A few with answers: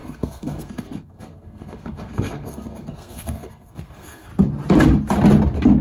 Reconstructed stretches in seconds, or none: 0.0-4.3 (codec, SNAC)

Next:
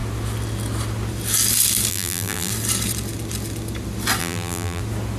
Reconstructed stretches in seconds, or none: 1.9-2.5 (vocoder, BigVGAN v2); 4.2-4.8

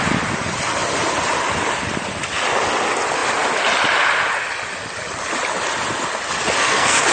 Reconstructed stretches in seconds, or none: 6.6-7.1 (codec, SNAC)

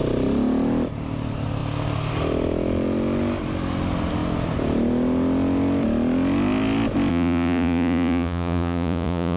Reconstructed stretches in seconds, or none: 7.1-9.4 (vocoder, Vocos)

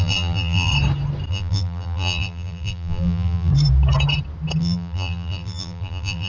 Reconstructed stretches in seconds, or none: 0.0-0.7 (vocoder, BigVGAN v2); 1.3-3.5; 4.6-6.3

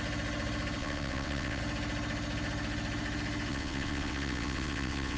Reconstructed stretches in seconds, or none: 0.8-1.6 (vocoder, WaveNeXt); 3.5-5.2

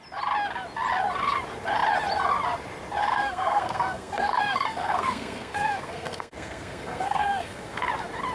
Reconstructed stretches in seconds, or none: 3.0-7.9 (codec, SNAC)

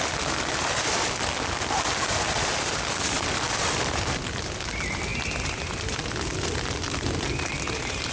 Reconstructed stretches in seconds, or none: none